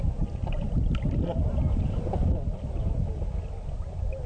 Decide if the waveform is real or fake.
real